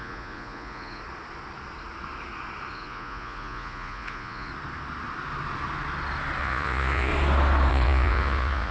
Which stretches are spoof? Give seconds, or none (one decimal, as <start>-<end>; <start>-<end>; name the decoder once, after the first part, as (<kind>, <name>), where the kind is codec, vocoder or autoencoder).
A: 0.0-1.0 (vocoder, Vocos); 2.7-4.5; 6.4-7.1; 7.7-8.7